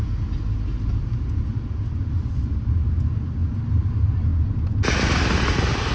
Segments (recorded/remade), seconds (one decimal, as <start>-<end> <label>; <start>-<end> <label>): 0.0-5.9 recorded